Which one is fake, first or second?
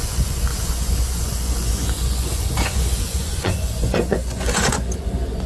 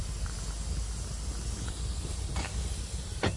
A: first